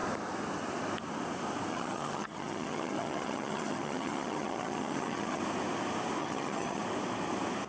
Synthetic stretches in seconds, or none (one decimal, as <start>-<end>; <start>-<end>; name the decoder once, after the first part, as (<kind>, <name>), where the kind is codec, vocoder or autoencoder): 1.7-5.4 (vocoder, HiFi-GAN); 6.2-6.8